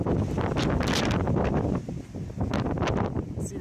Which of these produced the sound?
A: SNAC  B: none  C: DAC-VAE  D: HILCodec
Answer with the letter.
B